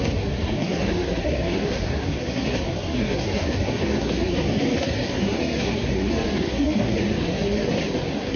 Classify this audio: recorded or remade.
remade